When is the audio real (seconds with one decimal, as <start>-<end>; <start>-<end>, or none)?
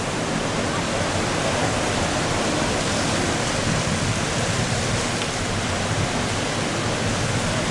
0.0-1.6; 5.0-7.7